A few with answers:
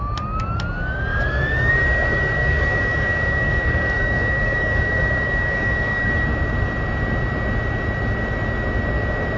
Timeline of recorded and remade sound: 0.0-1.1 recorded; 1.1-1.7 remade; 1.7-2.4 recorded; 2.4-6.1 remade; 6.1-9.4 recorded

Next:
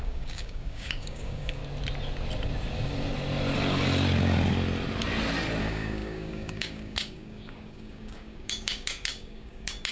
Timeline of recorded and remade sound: 0.0-1.6 remade; 1.6-5.6 recorded; 5.6-9.9 remade

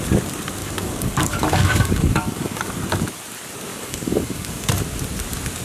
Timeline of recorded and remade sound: 0.0-0.6 recorded; 0.6-2.7 remade; 2.7-3.7 recorded; 3.7-4.7 remade; 4.7-5.6 recorded

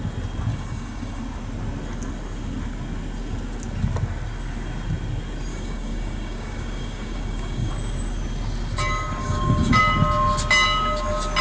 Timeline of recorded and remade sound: 0.0-0.5 recorded; 0.5-1.2 remade; 1.2-5.5 recorded; 5.5-7.7 remade; 7.7-9.2 recorded; 9.2-9.8 remade; 9.8-11.4 recorded

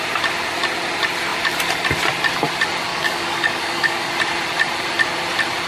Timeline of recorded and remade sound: 0.0-2.9 recorded; 2.9-4.1 remade; 4.1-5.7 recorded

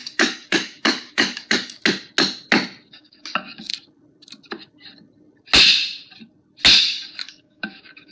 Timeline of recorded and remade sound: 0.0-1.8 remade; 1.8-2.9 recorded; 2.9-3.7 remade; 3.7-6.8 recorded; 6.8-8.1 remade

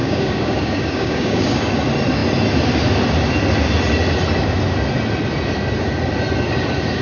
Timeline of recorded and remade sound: 0.0-1.7 remade; 1.7-7.0 recorded

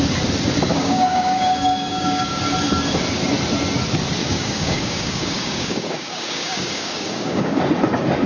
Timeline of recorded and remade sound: 0.0-0.7 recorded; 0.7-2.4 remade; 2.4-4.2 recorded; 4.2-7.6 remade; 7.6-8.3 recorded